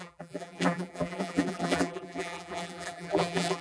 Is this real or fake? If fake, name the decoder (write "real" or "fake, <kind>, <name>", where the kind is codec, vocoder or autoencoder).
fake, vocoder, BigVGAN v2